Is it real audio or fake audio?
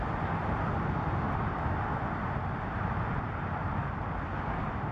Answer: real